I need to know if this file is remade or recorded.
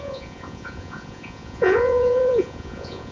remade